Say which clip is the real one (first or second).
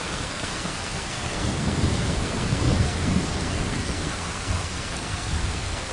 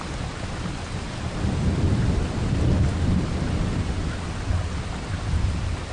second